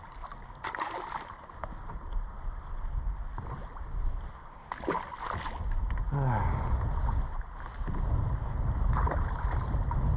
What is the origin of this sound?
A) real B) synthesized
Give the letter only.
A